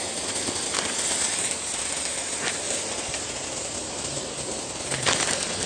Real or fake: real